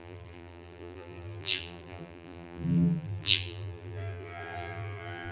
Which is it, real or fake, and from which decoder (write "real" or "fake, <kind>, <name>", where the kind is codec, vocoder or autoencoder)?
fake, vocoder, BigVGAN v2